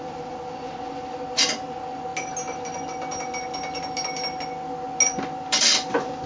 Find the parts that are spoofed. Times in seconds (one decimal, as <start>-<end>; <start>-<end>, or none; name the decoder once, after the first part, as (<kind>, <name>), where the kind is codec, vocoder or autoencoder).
none